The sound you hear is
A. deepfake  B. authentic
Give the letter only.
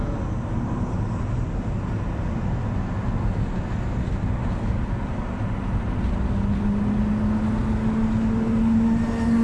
B